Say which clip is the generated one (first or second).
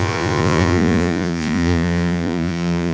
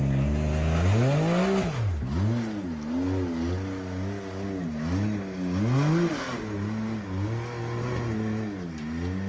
first